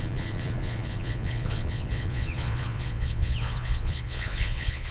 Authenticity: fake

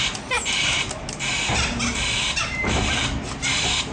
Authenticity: real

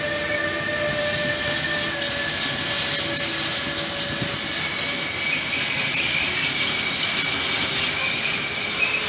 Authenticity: real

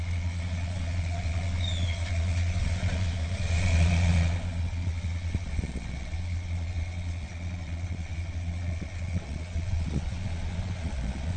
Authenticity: fake